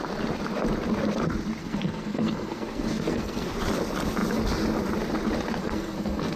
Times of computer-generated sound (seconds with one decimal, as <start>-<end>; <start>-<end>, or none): 1.6-3.5; 5.6-6.4